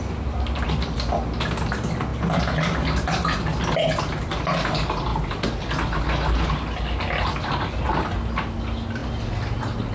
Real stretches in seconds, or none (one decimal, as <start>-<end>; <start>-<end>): 0.0-9.9